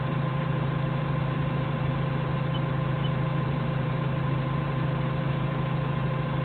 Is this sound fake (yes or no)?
yes